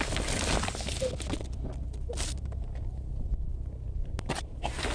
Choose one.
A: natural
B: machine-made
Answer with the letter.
A